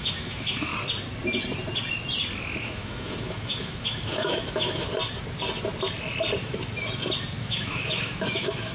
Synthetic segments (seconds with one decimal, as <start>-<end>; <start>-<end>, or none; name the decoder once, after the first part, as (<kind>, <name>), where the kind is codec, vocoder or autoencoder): 0.0-0.7 (autoencoder, DAC-VAE); 2.6-4.9; 7.4-8.7

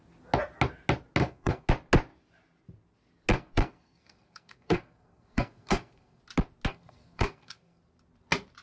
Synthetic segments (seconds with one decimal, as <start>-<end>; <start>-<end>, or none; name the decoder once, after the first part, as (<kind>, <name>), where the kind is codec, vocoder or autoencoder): 1.2-1.7 (codec, SNAC); 3.3-6.2; 6.7-7.8

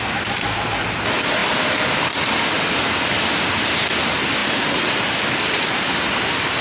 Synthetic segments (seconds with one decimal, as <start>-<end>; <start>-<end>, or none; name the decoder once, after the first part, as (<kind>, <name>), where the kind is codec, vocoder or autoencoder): 1.4-2.3 (vocoder, BigVGAN v2)

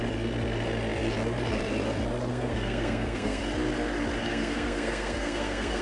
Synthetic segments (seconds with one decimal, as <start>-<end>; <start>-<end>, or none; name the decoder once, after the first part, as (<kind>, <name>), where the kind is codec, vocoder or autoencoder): 2.3-3.4 (codec, SNAC); 4.2-5.8

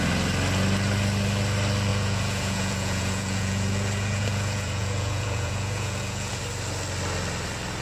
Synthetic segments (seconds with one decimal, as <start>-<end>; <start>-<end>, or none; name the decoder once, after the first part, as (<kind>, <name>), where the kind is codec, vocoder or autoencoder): 1.9-6.4 (vocoder, Vocos)

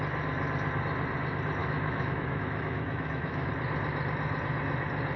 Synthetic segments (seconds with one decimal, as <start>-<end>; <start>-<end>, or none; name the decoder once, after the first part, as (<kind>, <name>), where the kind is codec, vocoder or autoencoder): 1.6-3.5 (autoencoder, DAC-VAE)

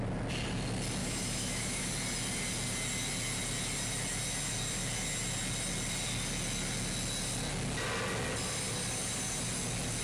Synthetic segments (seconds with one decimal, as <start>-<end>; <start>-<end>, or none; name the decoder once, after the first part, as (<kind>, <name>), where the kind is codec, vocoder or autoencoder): 1.0-1.9 (autoencoder, DAC-VAE)